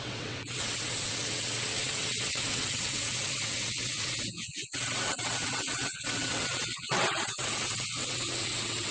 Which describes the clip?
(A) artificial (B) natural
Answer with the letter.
A